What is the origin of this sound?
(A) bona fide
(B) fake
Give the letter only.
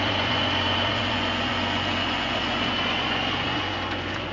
B